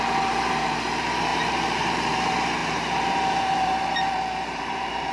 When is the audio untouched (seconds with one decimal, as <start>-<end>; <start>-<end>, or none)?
none